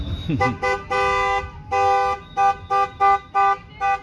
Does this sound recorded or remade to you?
recorded